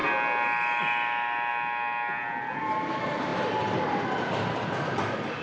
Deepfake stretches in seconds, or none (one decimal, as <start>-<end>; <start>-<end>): none